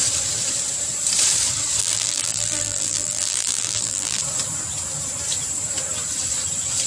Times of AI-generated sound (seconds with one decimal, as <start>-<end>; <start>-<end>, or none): 1.8-4.2